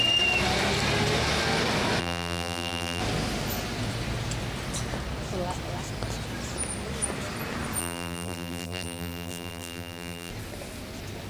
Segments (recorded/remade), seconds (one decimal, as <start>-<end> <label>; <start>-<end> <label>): 0.0-2.0 recorded; 2.0-3.0 remade; 3.0-7.8 recorded; 7.8-10.3 remade; 10.3-11.3 recorded